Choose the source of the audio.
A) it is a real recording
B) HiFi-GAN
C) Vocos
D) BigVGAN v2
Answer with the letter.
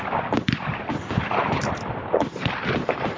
D